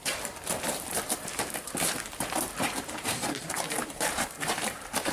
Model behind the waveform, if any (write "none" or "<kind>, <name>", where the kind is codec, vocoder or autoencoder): vocoder, BigVGAN v2